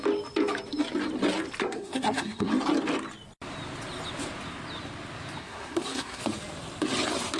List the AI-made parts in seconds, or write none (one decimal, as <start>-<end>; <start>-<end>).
1.6-2.5; 5.4-6.2